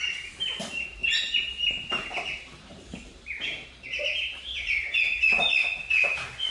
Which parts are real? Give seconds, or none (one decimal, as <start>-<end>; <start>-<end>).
0.0-1.0; 4.9-6.5